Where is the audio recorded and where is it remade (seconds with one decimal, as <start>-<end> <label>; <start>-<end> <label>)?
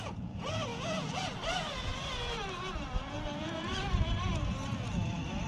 0.0-1.9 remade; 1.9-3.0 recorded; 3.0-3.7 remade; 3.7-5.5 recorded